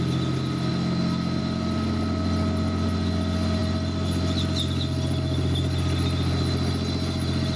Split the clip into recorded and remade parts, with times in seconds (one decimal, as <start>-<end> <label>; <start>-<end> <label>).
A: 0.0-7.6 recorded